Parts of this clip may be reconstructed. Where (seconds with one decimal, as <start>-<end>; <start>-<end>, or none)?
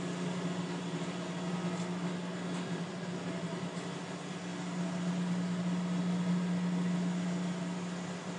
none